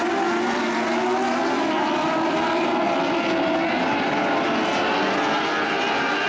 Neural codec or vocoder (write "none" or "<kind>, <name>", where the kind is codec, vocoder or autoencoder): none